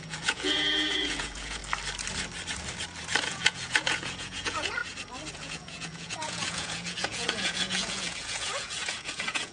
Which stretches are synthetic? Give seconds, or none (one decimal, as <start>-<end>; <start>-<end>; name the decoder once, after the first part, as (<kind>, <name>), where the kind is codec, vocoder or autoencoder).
0.0-1.6 (vocoder, Vocos); 3.2-4.8; 5.3-9.5